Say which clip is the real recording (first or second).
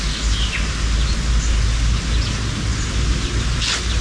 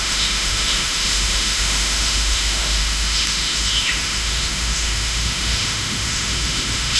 first